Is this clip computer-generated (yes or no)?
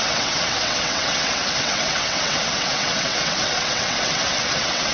yes